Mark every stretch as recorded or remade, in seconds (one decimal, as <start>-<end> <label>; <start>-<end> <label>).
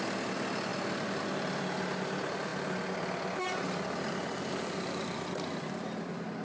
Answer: 0.0-6.4 recorded